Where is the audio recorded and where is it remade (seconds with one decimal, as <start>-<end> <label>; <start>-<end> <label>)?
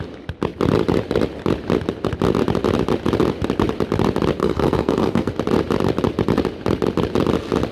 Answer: 0.0-4.4 recorded; 4.4-5.3 remade; 5.3-7.7 recorded